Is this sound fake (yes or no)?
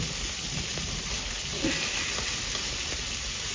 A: no